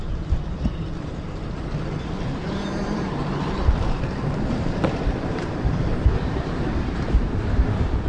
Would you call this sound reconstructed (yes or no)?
yes